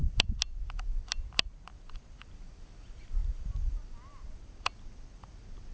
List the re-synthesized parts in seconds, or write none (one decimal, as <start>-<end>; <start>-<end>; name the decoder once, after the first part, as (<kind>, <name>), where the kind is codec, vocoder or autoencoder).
none